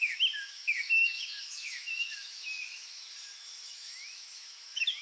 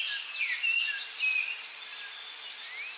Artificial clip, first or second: first